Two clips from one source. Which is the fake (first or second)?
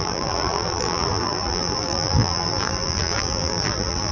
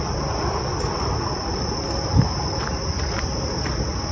first